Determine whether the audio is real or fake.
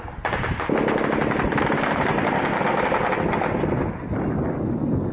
real